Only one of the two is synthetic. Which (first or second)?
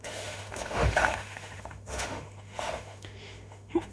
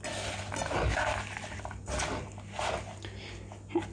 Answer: first